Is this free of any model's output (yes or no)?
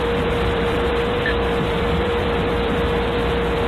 no